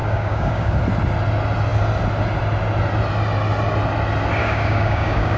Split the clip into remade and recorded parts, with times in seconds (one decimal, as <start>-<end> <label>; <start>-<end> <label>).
0.0-0.8 remade; 0.8-4.4 recorded; 4.4-5.4 remade